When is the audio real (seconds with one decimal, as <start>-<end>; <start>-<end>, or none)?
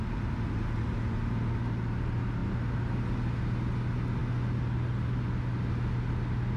0.0-6.6